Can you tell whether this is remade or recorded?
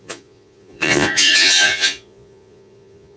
remade